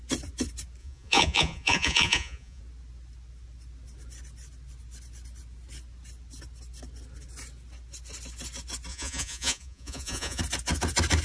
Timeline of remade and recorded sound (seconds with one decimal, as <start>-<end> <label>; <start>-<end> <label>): 0.0-0.8 recorded; 0.8-2.6 remade; 2.6-8.9 recorded; 8.9-10.4 remade; 10.4-11.2 recorded